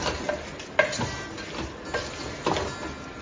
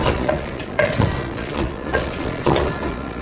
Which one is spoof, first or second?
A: second